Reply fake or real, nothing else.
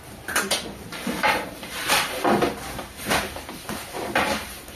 fake